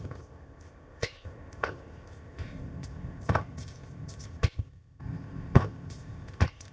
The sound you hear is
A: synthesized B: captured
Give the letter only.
A